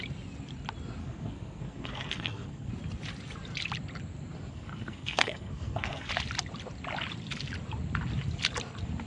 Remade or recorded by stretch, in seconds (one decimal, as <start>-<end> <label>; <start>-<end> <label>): 0.0-1.0 recorded; 1.0-2.7 remade; 2.7-4.5 recorded; 4.5-6.1 remade; 6.1-9.1 recorded